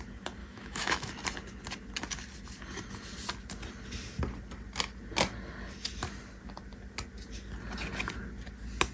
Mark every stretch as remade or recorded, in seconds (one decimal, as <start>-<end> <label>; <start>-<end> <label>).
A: 0.0-0.4 recorded; 0.4-1.1 remade; 1.1-8.9 recorded